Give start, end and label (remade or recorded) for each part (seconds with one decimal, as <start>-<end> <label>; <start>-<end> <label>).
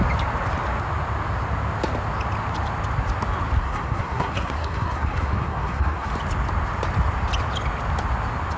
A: 0.0-3.6 recorded; 3.6-6.1 remade; 6.1-8.6 recorded